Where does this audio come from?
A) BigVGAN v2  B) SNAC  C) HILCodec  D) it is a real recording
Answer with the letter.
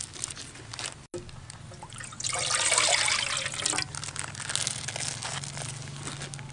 D